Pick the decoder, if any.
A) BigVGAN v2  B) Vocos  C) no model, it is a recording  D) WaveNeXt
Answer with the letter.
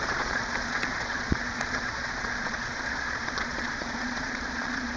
B